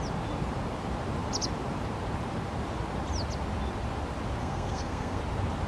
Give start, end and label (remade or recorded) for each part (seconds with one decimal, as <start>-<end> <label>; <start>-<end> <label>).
0.0-4.4 recorded; 4.4-5.2 remade; 5.2-5.7 recorded